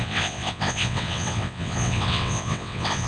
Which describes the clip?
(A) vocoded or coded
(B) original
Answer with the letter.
A